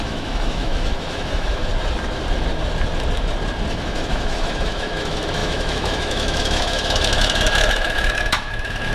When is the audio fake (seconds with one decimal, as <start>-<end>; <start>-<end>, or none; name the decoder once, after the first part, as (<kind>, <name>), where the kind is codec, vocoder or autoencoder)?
0.0-1.7 (autoencoder, DAC-VAE); 3.7-8.9

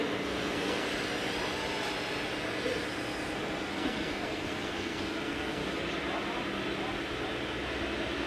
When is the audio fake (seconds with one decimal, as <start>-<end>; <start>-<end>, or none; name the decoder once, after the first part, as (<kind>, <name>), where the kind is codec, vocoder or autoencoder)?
0.0-0.9 (codec, SNAC); 3.7-5.6

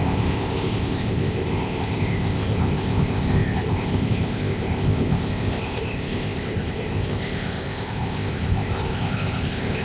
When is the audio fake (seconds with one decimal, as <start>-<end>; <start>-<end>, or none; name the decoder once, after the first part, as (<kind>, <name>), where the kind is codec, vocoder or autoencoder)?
0.0-9.8 (codec, ZipCodec)